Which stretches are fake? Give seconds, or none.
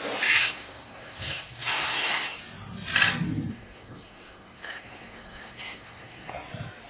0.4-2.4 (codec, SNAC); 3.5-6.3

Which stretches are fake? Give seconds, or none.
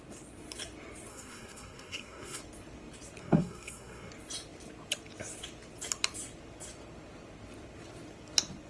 1.1-2.4 (codec, SNAC); 3.2-4.1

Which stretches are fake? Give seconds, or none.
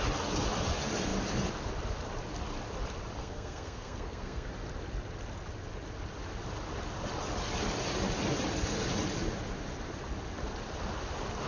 3.2-4.5 (codec, SNAC)